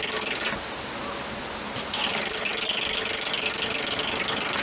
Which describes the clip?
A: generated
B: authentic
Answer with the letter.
B